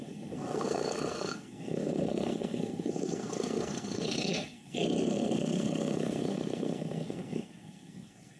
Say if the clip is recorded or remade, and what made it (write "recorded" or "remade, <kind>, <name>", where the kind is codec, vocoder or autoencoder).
remade, codec, SNAC